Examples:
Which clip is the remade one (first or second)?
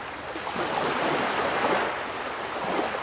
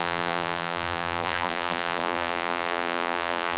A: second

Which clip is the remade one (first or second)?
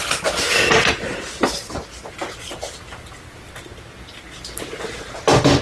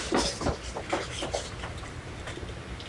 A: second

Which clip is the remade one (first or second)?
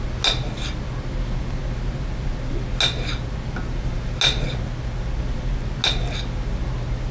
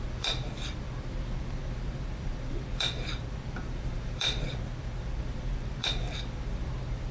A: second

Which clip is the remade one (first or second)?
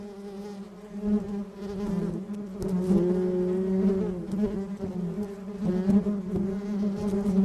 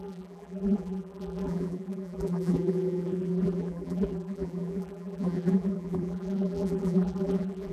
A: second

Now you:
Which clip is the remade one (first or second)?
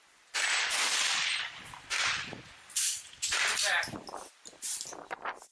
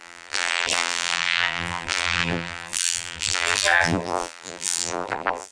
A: second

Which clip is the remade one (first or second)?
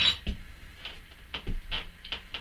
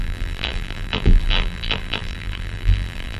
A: second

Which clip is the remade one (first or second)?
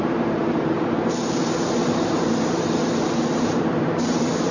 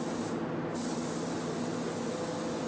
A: first